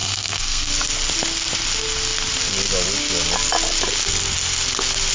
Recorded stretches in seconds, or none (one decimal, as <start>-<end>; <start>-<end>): 0.7-5.1